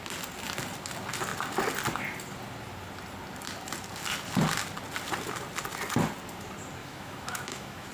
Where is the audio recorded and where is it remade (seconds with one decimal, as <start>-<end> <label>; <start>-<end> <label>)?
0.0-6.8 recorded; 6.8-7.9 remade